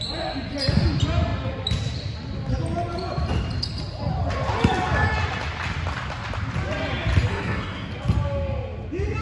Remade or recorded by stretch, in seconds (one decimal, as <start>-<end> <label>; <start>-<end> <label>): 0.0-7.3 recorded; 7.3-7.9 remade; 7.9-9.2 recorded